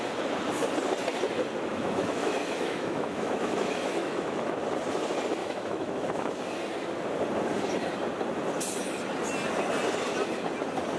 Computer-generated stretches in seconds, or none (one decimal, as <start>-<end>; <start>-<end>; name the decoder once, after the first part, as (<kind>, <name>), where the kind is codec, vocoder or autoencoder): 1.7-4.6 (autoencoder, DAC-VAE); 5.4-6.3